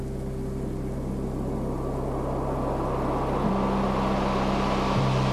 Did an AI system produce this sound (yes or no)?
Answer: no